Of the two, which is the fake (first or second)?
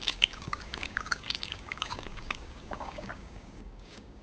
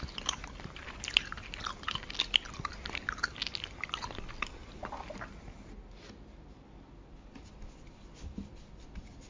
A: first